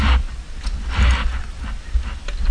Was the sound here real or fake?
real